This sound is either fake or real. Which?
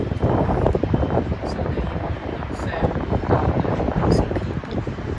fake